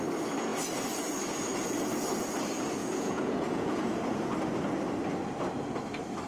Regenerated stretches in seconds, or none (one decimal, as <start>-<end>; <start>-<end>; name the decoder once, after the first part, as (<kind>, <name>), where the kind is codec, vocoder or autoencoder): 2.8-4.3 (vocoder, Vocos)